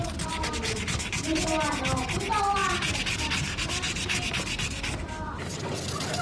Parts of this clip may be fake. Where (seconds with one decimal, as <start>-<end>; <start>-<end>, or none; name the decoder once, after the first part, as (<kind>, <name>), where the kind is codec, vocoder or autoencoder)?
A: none